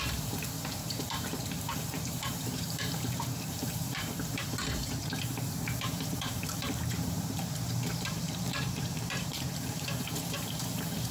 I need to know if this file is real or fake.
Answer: fake